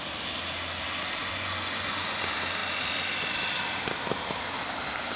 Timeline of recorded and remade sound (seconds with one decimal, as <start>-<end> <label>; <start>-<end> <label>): 0.0-1.2 recorded; 1.2-2.2 remade; 2.2-5.2 recorded

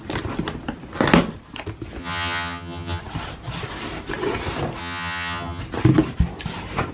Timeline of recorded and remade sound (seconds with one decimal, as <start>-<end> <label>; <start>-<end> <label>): 0.0-2.0 recorded; 2.0-3.0 remade; 3.0-4.8 recorded; 4.8-5.6 remade; 5.6-6.9 recorded

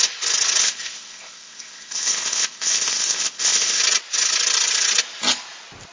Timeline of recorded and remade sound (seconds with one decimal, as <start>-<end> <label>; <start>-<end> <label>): 0.0-0.6 recorded; 0.6-3.8 remade; 3.8-5.9 recorded

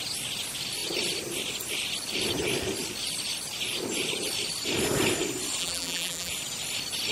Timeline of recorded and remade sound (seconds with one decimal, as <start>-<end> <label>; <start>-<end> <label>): 0.0-5.6 recorded; 5.6-6.3 remade; 6.3-7.1 recorded

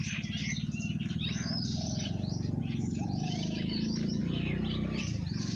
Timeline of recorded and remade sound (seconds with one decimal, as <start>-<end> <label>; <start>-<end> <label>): 0.0-5.6 recorded

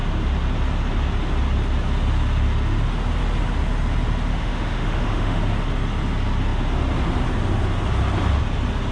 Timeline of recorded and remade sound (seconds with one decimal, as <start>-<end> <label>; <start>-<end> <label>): 0.0-4.3 recorded; 4.3-5.4 remade; 5.4-8.9 recorded

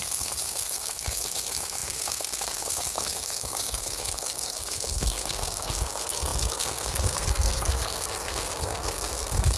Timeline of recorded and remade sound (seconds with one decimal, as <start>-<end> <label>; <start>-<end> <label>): 0.0-9.6 remade